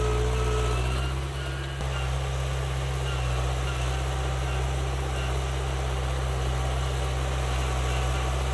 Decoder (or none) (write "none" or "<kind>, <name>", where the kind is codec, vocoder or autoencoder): none